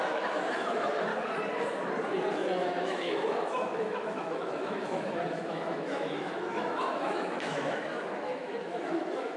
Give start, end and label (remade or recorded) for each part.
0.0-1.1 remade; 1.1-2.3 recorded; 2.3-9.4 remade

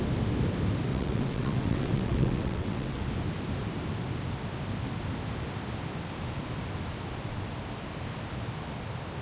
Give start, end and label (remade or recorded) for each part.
0.0-0.9 recorded; 0.9-3.1 remade; 3.1-9.2 recorded

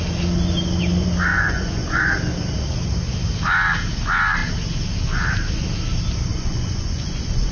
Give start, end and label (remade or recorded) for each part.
0.0-1.3 recorded; 1.3-2.1 remade; 2.1-6.3 recorded; 6.3-7.5 remade

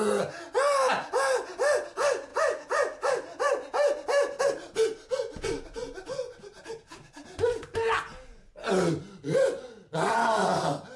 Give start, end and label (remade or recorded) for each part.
0.0-11.0 recorded

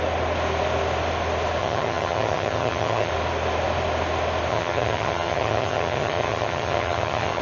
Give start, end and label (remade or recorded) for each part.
0.0-1.6 recorded; 1.6-3.1 remade; 3.1-4.5 recorded; 4.5-7.4 remade